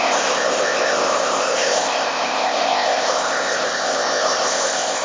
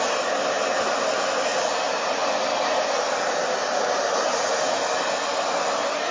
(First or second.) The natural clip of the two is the second